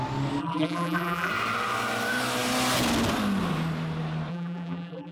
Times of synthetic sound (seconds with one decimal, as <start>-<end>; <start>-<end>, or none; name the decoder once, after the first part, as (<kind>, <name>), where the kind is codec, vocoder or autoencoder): 0.4-1.3 (vocoder, BigVGAN v2); 4.3-5.1